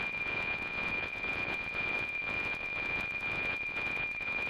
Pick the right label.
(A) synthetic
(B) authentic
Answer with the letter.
A